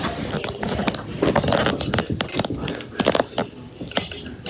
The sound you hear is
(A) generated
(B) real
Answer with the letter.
A